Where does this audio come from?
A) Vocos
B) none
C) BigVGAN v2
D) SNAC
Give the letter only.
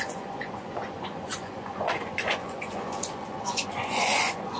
A